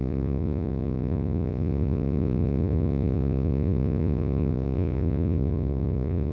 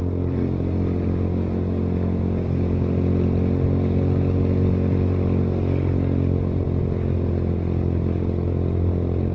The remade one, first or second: first